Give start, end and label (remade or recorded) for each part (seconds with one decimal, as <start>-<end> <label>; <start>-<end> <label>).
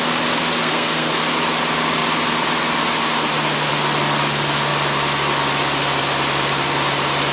0.0-0.6 recorded; 0.6-1.1 remade; 1.1-7.3 recorded